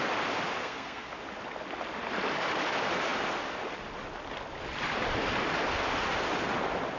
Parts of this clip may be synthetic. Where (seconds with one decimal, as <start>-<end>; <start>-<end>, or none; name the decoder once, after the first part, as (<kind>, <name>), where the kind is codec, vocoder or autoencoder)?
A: 0.6-1.1 (codec, SNAC)